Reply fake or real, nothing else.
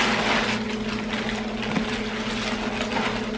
real